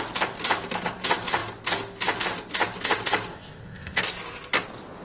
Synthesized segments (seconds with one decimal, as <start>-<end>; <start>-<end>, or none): 3.3-4.0